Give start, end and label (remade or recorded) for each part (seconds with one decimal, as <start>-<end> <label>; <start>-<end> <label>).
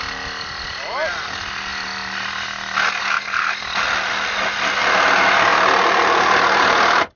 0.0-7.2 recorded